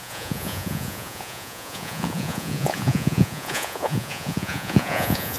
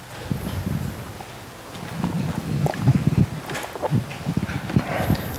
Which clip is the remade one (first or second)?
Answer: first